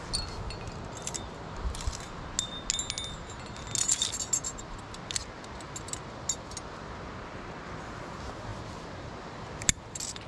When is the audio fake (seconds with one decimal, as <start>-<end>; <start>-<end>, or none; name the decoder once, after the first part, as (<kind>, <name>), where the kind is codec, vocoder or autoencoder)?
none